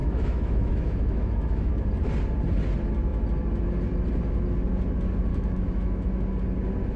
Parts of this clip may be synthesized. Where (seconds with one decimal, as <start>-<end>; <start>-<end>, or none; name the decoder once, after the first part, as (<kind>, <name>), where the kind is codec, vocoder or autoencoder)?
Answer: 0.0-1.7 (autoencoder, DAC-VAE); 5.3-6.3